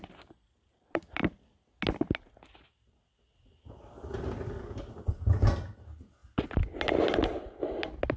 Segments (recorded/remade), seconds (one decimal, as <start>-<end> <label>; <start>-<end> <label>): 0.0-8.2 recorded